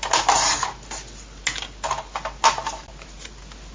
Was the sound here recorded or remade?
recorded